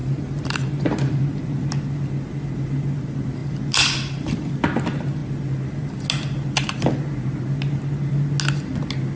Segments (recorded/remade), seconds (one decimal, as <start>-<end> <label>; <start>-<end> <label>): 0.0-1.2 remade; 1.2-9.2 recorded